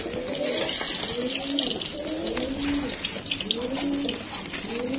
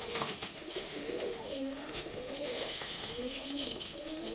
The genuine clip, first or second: first